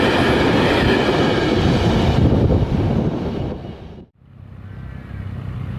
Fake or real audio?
real